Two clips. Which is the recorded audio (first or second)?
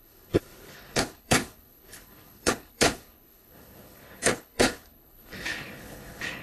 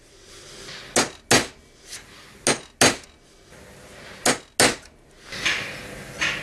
second